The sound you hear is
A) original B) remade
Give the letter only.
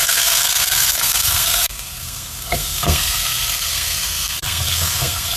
B